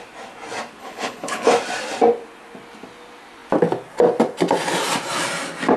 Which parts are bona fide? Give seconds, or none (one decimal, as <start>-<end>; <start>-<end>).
0.0-0.8; 1.5-5.8